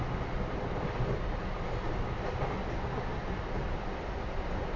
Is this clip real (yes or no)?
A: yes